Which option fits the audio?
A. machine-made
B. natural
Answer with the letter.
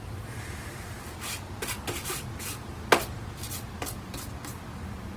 B